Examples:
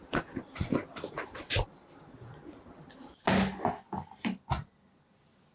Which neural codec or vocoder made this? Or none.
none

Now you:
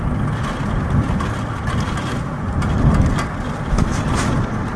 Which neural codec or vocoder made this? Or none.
none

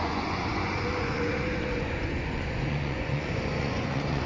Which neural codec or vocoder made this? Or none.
vocoder, Vocos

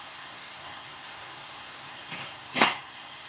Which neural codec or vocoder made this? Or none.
codec, SNAC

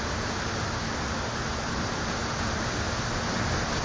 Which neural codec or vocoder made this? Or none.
none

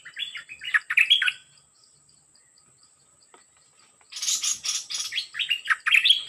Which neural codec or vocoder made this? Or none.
none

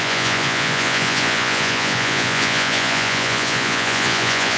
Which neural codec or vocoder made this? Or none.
vocoder, Vocos